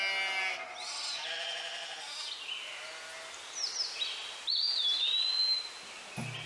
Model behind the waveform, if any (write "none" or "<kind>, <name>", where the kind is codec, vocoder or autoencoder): none